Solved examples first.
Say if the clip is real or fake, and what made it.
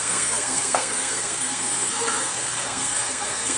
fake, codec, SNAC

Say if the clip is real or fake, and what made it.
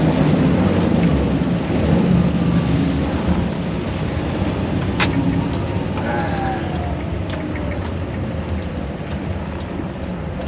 real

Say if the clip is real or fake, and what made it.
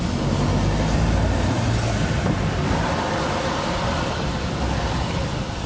real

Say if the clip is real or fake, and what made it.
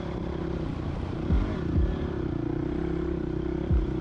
fake, vocoder, BigVGAN v2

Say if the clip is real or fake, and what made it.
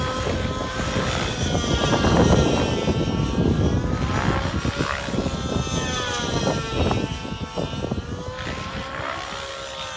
real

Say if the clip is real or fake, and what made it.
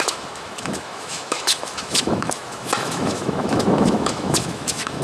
fake, autoencoder, DAC-VAE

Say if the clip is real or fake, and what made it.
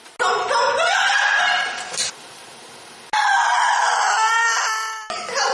real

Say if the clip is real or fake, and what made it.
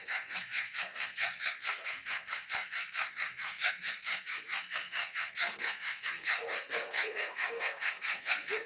fake, codec, SNAC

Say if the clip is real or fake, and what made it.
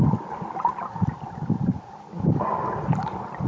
real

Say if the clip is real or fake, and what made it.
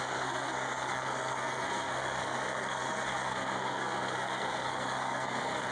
fake, codec, SNAC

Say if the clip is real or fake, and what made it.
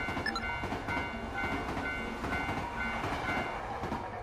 real